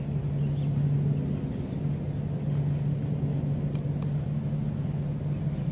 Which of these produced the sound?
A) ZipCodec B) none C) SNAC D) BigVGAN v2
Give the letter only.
B